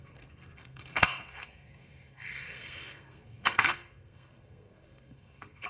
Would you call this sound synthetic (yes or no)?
yes